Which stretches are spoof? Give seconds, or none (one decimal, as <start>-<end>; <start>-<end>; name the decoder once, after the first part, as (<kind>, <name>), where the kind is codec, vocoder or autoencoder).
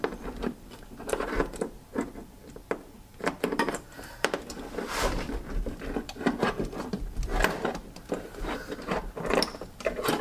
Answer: 0.0-7.3 (vocoder, BigVGAN v2)